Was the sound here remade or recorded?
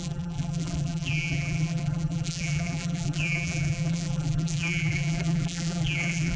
remade